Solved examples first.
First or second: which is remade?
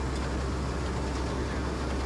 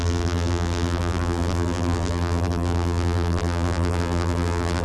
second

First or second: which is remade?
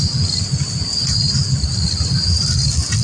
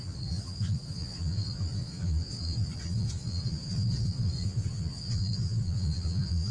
second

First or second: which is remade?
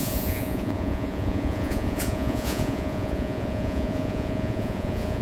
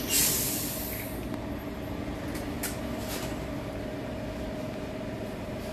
first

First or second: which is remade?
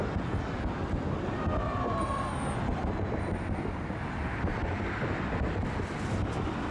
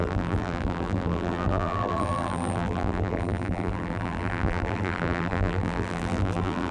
second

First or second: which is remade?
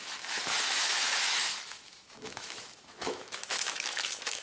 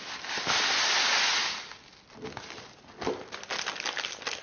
first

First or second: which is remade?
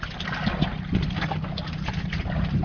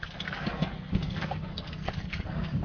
second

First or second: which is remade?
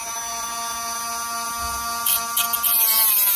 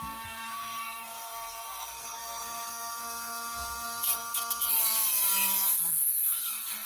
second